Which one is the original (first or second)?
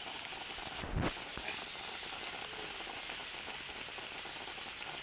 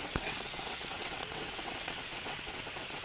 first